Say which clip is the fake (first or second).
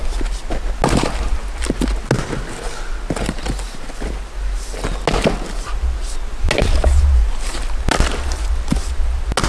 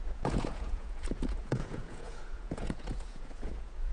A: second